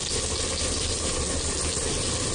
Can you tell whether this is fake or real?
real